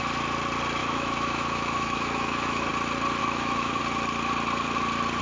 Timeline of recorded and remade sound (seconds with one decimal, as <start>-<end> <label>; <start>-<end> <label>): 0.0-0.8 recorded; 0.8-2.7 remade; 2.7-3.2 recorded; 3.2-3.8 remade; 3.8-5.2 recorded